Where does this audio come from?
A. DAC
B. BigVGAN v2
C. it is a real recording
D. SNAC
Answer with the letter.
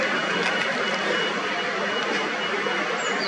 C